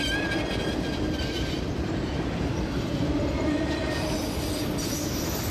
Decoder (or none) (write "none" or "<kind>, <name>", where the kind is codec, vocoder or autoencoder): vocoder, BigVGAN v2